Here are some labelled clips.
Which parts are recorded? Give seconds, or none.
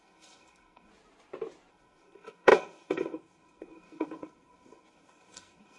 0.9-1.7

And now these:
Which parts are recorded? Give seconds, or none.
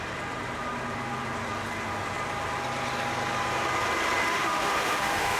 0.0-4.3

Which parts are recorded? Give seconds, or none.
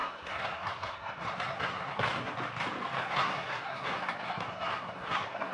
2.3-3.0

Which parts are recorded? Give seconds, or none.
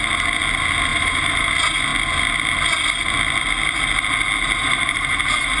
0.0-0.9; 1.5-4.6